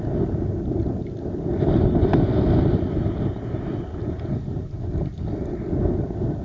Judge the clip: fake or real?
real